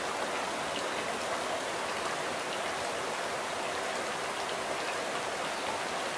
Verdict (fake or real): real